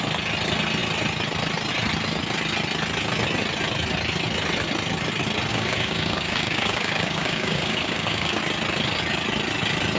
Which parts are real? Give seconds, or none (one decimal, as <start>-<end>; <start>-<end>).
0.0-5.5; 8.4-10.0